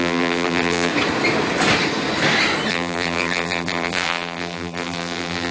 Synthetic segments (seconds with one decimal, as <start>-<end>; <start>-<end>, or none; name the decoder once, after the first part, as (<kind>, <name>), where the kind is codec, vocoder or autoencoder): 0.0-0.9 (vocoder, BigVGAN v2); 2.7-5.5